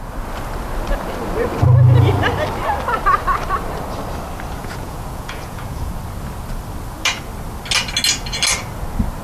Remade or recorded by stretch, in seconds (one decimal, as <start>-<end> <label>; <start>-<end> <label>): 0.0-4.6 recorded; 4.6-5.9 remade; 5.9-9.2 recorded